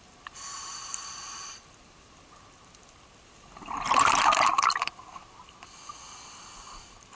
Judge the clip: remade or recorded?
recorded